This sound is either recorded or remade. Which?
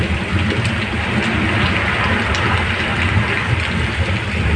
recorded